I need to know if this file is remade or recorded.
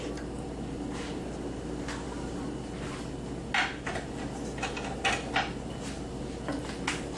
recorded